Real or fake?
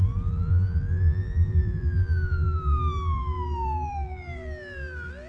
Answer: fake